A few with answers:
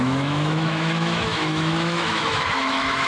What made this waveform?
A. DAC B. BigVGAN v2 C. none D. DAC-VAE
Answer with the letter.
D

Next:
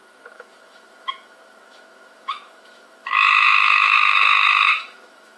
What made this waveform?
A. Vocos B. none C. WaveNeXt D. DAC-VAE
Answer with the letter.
D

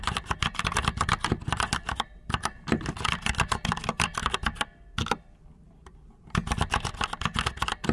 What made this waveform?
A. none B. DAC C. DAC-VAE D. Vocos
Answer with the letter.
A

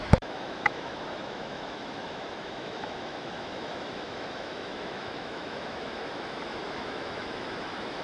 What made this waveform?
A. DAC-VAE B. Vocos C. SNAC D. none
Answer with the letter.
A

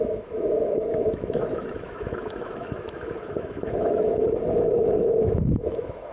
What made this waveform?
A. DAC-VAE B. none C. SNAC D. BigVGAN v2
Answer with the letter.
A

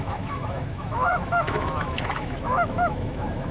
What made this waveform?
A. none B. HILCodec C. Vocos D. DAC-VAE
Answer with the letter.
D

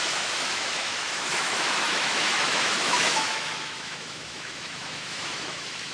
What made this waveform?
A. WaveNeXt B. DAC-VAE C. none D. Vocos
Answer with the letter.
B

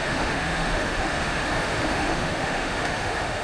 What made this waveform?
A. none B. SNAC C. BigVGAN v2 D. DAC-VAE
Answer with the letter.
D